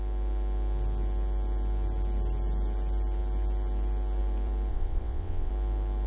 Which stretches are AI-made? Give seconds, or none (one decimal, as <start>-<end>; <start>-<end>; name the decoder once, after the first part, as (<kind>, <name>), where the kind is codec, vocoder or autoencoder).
4.7-5.5 (vocoder, WaveNeXt)